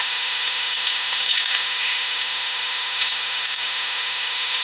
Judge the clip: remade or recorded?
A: remade